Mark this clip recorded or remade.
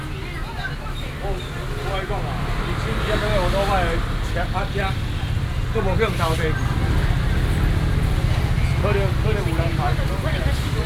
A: recorded